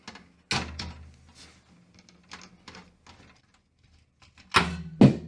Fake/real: real